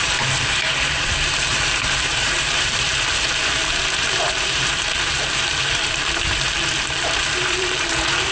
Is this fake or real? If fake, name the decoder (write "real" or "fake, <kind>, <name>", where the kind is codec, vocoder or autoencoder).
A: fake, vocoder, BigVGAN v2